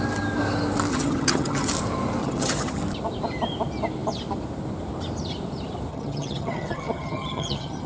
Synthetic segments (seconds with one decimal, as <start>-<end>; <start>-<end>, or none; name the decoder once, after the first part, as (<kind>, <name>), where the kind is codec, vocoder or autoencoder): 0.9-1.7 (vocoder, HiFi-GAN); 2.2-2.8; 5.9-7.9